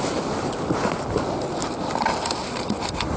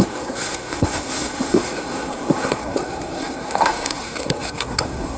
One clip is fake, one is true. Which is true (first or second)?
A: first